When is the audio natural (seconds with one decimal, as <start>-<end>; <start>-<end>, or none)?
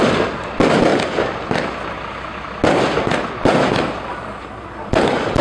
0.0-5.4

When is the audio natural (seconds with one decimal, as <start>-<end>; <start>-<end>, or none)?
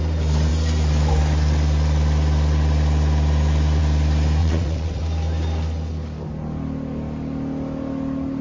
0.0-4.4; 5.0-8.4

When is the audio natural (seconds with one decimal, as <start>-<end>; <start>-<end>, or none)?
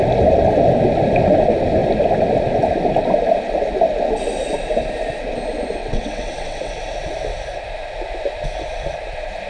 0.0-5.8; 6.7-9.5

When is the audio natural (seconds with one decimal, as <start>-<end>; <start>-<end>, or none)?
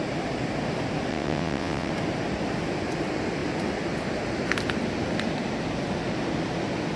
0.0-1.1; 1.9-7.0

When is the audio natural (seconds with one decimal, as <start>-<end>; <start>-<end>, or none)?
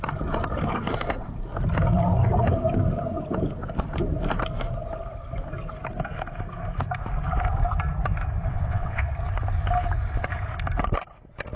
0.0-8.5; 9.0-11.6